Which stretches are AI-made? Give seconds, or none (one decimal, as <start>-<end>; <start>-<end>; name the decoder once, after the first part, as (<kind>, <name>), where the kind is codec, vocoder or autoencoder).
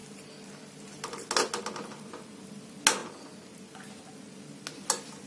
none